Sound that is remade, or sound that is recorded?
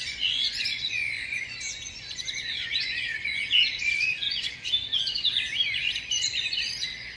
remade